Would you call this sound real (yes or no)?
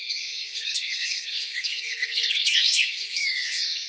no